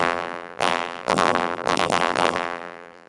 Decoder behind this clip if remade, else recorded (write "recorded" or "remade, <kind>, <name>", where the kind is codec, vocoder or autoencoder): remade, vocoder, BigVGAN v2